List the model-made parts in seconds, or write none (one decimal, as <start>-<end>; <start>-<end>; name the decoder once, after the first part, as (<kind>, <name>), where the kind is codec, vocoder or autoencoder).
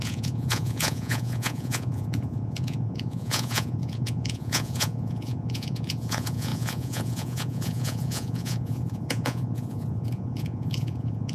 0.0-11.3 (vocoder, Vocos)